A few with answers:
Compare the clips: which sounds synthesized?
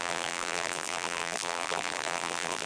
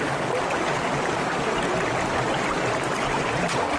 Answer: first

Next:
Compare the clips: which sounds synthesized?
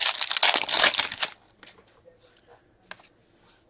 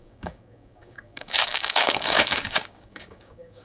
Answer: second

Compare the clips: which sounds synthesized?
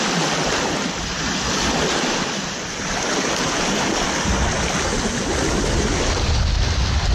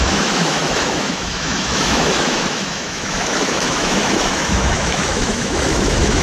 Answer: second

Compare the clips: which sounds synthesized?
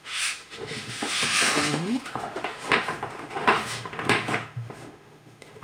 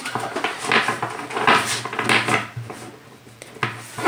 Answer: first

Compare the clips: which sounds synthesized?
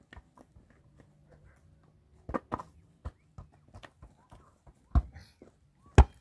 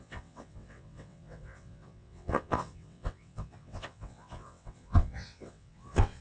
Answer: second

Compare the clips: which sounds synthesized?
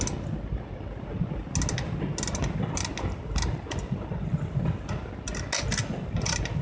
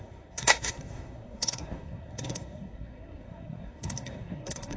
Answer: second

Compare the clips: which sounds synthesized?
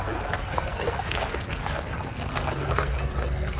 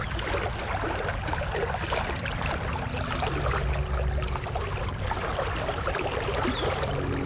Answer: first